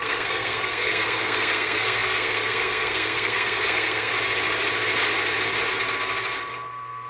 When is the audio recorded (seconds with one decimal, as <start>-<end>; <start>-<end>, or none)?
4.1-7.1